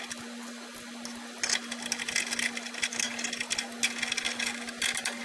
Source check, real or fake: real